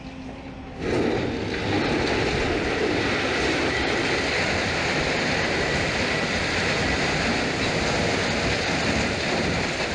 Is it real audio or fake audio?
real